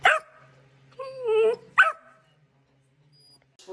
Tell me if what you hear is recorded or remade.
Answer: recorded